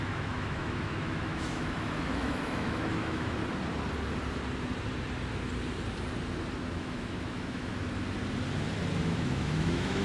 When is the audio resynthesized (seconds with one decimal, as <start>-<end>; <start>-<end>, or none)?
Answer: 0.0-3.4; 6.7-7.7; 9.0-10.0